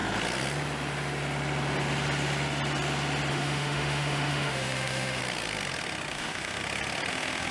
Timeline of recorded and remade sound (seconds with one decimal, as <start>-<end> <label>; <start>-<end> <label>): 0.0-3.3 recorded; 3.3-5.2 remade; 5.2-6.1 recorded; 6.1-6.6 remade; 6.6-7.1 recorded; 7.1-7.5 remade